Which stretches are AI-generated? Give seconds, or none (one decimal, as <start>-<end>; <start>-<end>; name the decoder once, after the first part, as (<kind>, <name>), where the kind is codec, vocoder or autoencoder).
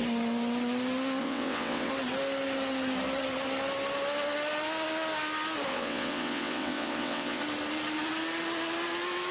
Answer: 1.2-1.9 (vocoder, WaveNeXt); 5.7-7.4